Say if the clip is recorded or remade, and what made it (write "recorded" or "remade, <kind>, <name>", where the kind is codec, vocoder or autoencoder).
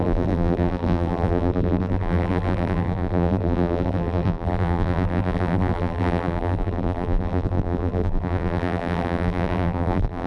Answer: remade, vocoder, BigVGAN v2